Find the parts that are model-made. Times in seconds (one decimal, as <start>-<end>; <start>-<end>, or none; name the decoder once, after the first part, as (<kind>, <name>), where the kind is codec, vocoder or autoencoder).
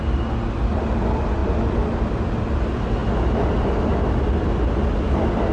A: none